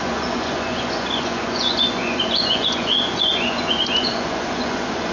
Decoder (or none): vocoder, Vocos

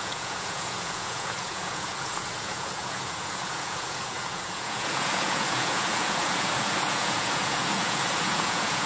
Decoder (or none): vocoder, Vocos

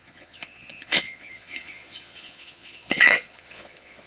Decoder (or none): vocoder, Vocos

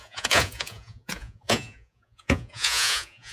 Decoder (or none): vocoder, Vocos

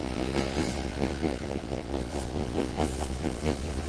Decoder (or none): vocoder, Vocos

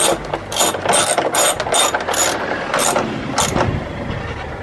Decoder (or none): none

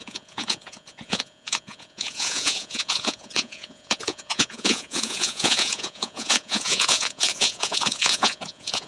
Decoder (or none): vocoder, Vocos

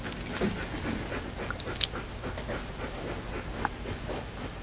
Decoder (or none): none